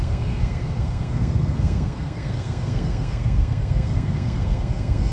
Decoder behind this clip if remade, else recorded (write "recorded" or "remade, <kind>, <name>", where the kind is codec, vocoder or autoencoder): remade, codec, SNAC